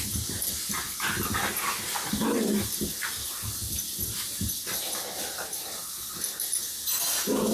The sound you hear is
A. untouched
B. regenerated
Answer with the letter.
A